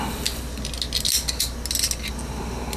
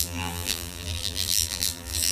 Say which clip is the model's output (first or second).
second